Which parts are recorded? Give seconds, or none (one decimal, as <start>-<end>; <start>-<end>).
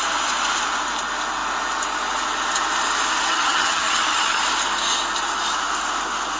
0.0-3.3; 4.4-6.4